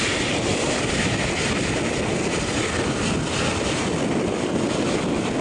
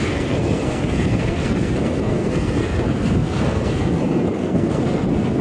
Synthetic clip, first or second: second